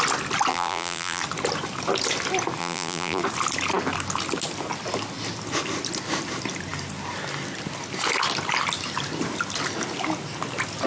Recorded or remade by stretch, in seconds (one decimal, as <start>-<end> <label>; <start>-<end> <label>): 0.0-0.5 recorded; 0.5-1.2 remade; 1.2-2.6 recorded; 2.6-3.2 remade; 3.2-10.9 recorded